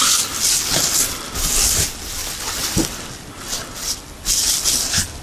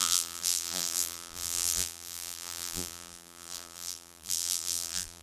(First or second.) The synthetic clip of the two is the second